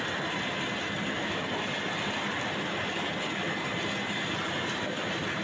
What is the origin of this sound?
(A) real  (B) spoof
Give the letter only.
A